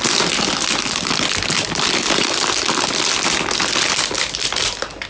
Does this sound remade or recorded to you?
recorded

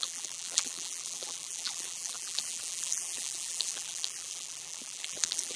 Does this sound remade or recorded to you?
remade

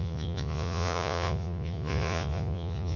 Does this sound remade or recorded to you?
remade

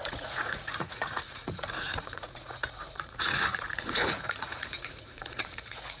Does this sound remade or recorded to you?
remade